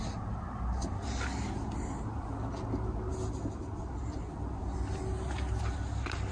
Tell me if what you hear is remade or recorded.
recorded